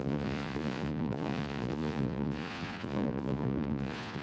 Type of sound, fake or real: fake